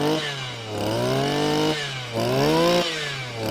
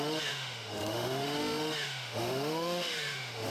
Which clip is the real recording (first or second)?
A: first